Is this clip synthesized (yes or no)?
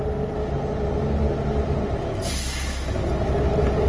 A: no